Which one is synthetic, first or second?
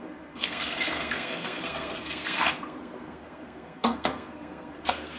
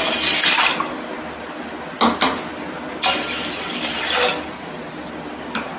first